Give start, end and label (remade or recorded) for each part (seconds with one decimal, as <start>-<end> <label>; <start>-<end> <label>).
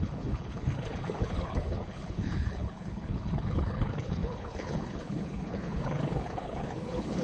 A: 0.0-7.2 remade